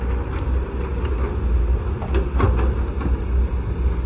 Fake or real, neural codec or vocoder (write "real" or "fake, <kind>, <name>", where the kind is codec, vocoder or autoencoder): real